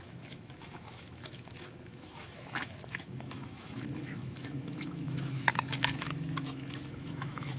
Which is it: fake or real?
fake